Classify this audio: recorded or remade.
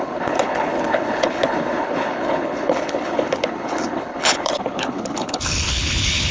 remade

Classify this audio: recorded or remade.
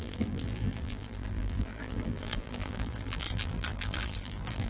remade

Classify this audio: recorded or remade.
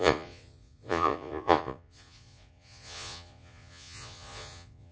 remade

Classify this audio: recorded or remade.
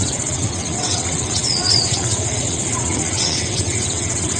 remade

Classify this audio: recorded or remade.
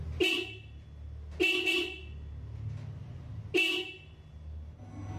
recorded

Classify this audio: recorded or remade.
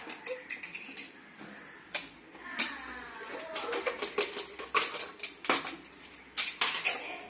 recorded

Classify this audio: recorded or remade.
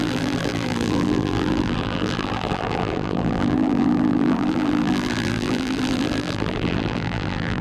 remade